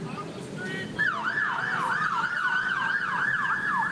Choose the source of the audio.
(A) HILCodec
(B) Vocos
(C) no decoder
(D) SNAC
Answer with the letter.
C